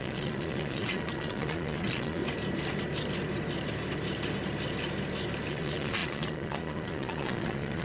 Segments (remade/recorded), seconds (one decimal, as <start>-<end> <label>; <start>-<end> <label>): 0.0-2.2 remade; 2.2-5.5 recorded; 5.5-7.8 remade